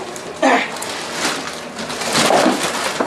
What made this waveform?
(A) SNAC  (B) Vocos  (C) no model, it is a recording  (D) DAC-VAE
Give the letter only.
C